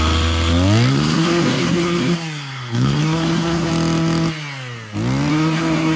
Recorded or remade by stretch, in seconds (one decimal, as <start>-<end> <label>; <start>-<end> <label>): 0.0-0.9 recorded; 0.9-3.7 remade; 3.7-5.3 recorded; 5.3-6.0 remade